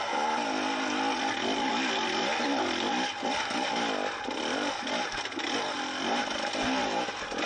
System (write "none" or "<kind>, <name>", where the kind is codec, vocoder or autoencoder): none